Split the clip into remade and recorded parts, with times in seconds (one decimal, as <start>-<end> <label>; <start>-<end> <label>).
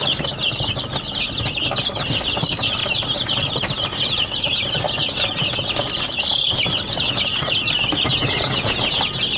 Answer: 0.0-8.2 recorded; 8.2-9.0 remade; 9.0-9.4 recorded